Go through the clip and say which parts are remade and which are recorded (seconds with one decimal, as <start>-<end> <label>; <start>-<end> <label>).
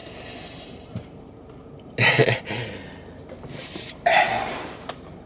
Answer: 0.0-1.4 remade; 1.4-5.3 recorded